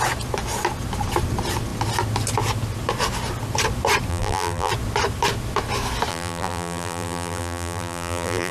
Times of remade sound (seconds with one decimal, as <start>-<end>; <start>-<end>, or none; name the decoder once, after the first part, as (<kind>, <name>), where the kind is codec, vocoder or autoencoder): 4.1-4.7 (vocoder, BigVGAN v2); 6.1-8.5